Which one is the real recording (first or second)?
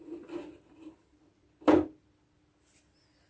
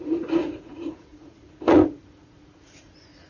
first